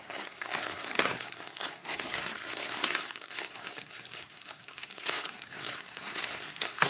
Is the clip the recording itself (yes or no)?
no